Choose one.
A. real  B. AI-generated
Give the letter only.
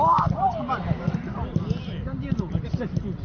A